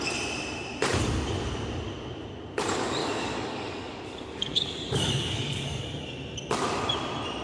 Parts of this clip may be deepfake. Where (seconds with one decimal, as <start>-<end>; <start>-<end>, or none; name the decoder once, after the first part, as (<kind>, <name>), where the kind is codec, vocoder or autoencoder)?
3.0-5.8 (codec, DAC)